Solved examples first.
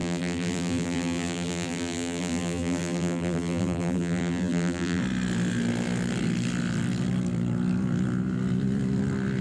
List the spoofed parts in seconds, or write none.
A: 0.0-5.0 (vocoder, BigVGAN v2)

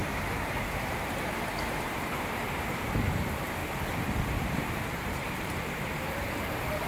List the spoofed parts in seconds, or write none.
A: 0.0-3.6 (vocoder, BigVGAN v2); 4.5-6.9